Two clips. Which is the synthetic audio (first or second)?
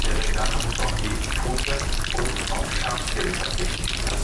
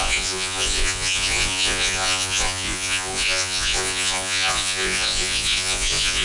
second